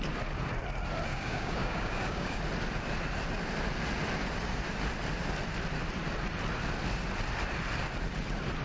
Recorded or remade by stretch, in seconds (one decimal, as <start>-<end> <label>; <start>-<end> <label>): 0.0-1.1 recorded; 1.1-2.4 remade; 2.4-8.6 recorded